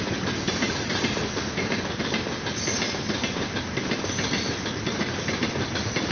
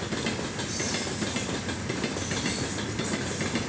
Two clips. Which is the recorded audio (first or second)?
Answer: second